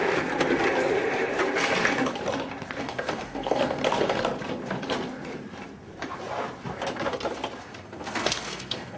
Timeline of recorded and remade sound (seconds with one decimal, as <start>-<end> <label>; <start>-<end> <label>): 0.0-2.8 recorded; 2.8-3.8 remade; 3.8-7.6 recorded; 7.6-9.0 remade